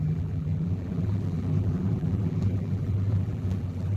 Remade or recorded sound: remade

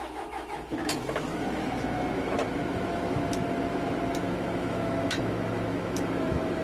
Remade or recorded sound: remade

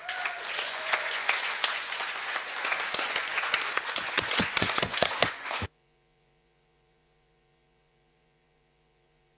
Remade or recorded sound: remade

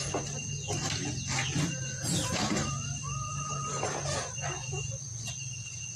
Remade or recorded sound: recorded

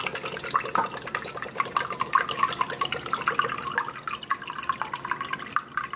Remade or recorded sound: recorded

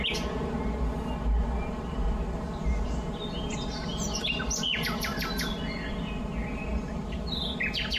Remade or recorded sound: recorded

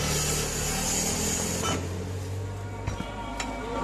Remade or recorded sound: recorded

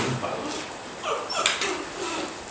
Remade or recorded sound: recorded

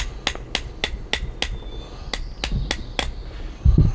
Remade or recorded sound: recorded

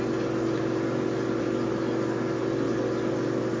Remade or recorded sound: recorded